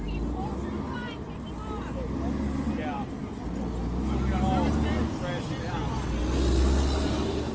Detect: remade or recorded recorded